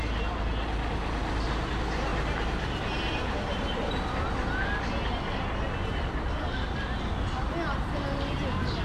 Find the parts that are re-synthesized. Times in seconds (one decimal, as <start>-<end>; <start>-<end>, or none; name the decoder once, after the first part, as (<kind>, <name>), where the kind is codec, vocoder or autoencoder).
1.2-1.7 (vocoder, BigVGAN v2)